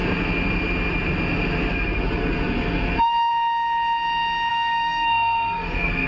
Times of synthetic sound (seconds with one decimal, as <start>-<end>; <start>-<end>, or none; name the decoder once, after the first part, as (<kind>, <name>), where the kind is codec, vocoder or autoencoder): 4.5-6.1 (codec, SNAC)